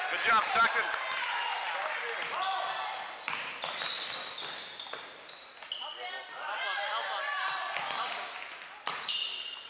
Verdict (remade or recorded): recorded